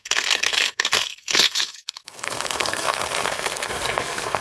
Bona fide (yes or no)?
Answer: no